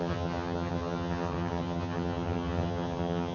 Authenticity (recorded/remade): remade